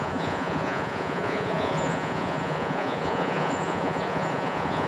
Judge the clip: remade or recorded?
remade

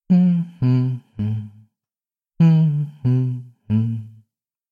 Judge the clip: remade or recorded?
recorded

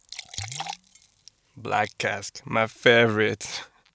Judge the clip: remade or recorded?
recorded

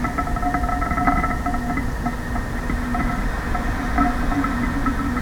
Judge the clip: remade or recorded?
recorded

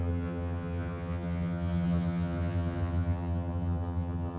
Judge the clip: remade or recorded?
remade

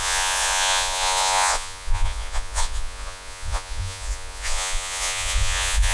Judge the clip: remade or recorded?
remade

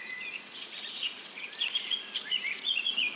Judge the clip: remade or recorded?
remade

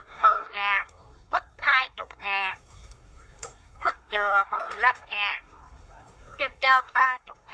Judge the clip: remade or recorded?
remade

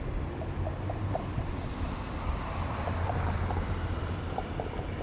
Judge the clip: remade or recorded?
remade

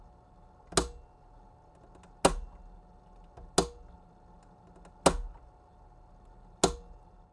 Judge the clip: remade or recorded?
recorded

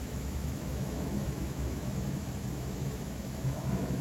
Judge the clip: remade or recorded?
remade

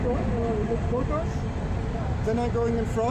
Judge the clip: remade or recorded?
recorded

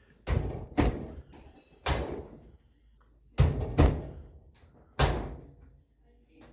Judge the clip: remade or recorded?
recorded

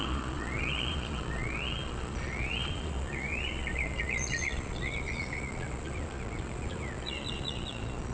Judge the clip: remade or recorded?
remade